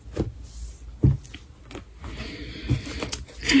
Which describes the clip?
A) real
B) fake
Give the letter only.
A